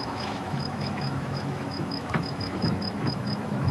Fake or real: fake